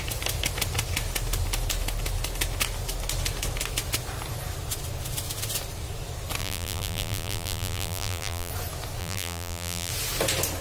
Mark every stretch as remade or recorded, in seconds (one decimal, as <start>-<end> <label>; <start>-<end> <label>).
0.0-6.4 recorded; 6.4-8.5 remade; 8.5-9.0 recorded; 9.0-9.9 remade; 9.9-10.6 recorded